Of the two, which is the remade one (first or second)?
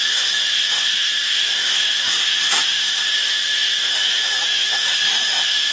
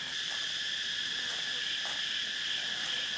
first